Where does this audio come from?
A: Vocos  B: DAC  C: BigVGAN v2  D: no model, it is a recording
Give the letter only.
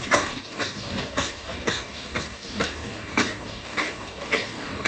B